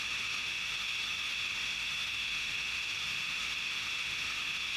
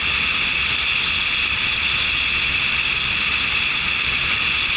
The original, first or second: second